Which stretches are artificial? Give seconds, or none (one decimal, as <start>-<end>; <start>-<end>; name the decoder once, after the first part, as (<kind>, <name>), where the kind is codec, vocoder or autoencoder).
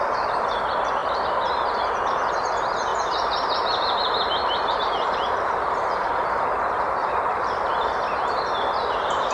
1.0-1.9 (vocoder, BigVGAN v2); 2.9-6.1; 7.0-7.7